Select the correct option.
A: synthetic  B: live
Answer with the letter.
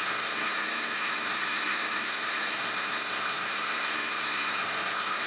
A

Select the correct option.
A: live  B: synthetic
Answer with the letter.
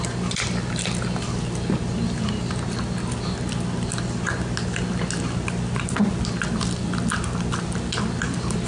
A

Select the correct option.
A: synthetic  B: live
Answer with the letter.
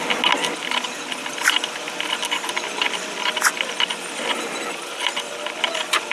B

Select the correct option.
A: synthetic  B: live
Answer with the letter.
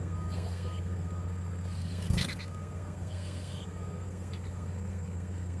A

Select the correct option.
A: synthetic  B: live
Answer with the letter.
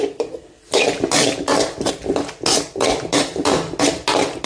B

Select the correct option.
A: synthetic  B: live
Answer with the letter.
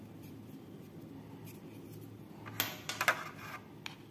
B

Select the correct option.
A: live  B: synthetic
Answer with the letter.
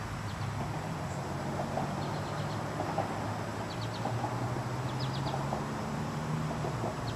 A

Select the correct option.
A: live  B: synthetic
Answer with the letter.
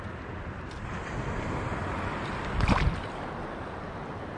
A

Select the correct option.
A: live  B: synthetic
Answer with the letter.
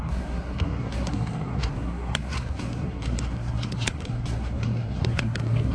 B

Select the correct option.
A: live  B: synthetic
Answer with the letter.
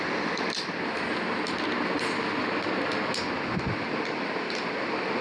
A